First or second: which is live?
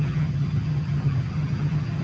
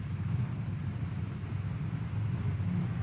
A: second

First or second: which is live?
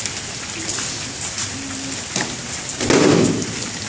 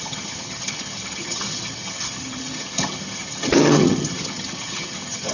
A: first